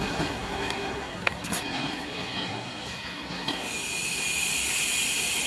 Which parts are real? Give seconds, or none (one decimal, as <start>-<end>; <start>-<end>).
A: 3.7-5.5